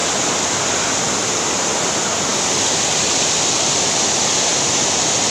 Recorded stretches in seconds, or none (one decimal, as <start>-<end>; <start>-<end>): 1.5-2.3; 4.2-5.3